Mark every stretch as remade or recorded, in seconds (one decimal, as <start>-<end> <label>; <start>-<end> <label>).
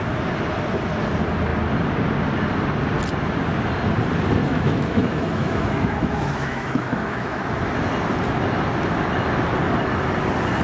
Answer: 0.0-4.5 recorded; 4.5-7.4 remade; 7.4-10.6 recorded